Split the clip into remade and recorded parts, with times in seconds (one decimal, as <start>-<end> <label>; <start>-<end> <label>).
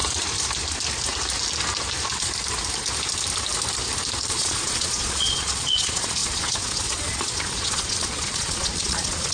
0.0-4.3 recorded; 4.3-9.3 remade